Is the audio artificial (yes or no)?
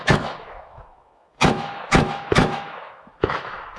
yes